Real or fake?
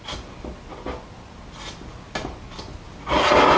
real